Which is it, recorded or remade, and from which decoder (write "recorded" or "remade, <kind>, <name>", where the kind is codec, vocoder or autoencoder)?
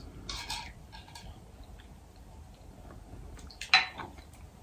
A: recorded